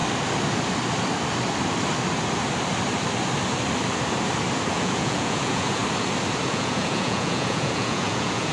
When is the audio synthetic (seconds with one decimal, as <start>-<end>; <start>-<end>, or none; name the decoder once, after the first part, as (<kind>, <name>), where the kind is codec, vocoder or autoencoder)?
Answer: 4.7-5.8 (vocoder, Vocos); 6.5-8.5